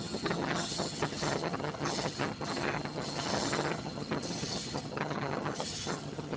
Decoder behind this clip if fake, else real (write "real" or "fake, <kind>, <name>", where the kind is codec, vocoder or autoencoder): fake, vocoder, HiFi-GAN